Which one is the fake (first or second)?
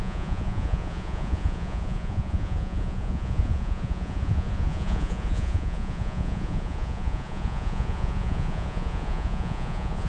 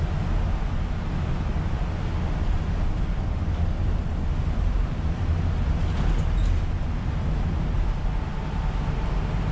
first